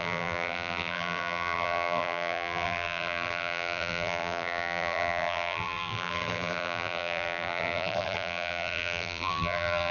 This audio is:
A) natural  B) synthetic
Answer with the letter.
B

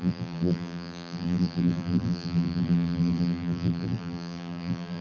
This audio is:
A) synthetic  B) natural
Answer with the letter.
A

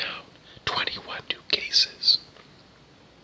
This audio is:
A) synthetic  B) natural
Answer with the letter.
B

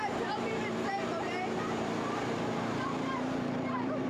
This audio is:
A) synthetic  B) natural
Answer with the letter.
A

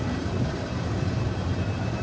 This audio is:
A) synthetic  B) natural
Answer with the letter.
A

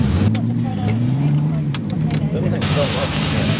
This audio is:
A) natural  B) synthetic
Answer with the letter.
B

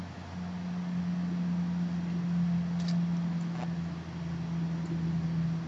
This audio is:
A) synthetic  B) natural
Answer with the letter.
B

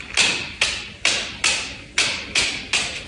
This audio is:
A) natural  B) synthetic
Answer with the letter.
A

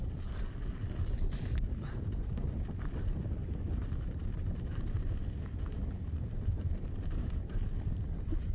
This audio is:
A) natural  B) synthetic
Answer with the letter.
B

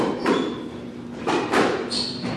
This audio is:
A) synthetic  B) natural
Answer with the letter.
B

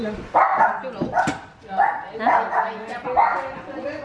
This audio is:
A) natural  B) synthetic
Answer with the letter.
A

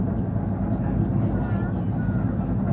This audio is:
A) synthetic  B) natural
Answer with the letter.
B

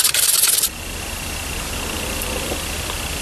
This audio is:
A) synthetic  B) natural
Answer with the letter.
A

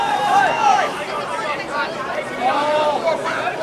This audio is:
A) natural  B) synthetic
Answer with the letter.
B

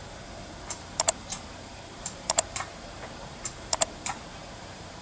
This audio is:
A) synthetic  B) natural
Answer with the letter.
A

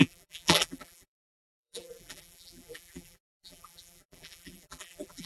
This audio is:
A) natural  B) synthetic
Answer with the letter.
B